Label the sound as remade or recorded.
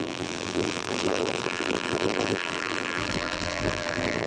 remade